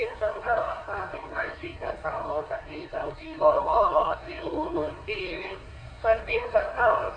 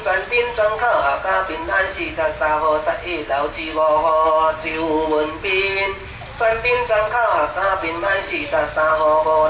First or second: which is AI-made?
first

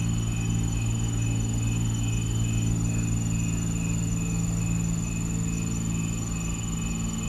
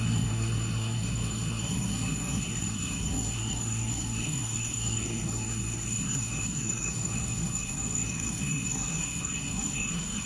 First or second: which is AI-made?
second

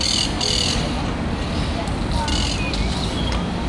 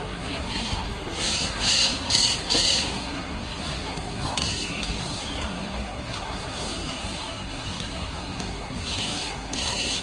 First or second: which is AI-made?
second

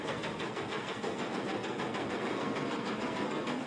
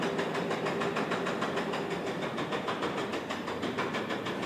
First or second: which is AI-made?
first